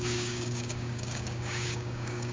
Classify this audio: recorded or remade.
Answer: remade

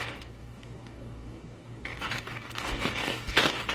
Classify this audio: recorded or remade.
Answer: remade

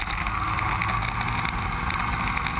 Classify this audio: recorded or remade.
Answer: recorded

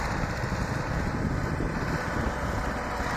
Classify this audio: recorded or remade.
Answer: recorded